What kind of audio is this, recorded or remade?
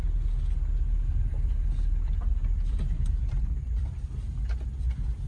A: recorded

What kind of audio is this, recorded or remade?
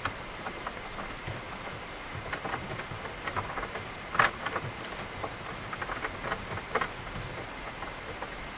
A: recorded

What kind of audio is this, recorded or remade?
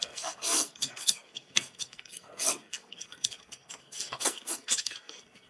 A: remade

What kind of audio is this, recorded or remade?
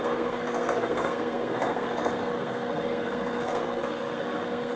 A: remade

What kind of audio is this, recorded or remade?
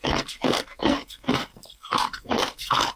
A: remade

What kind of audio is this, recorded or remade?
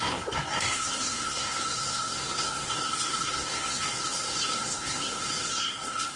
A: remade